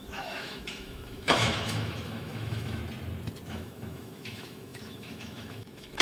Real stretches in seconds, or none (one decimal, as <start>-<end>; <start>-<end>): 2.8-3.5